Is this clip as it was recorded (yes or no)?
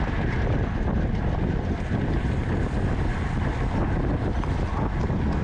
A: yes